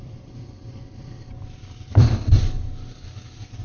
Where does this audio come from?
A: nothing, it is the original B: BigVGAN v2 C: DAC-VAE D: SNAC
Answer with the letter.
B